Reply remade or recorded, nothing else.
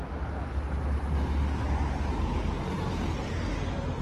recorded